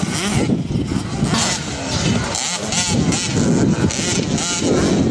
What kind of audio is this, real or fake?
real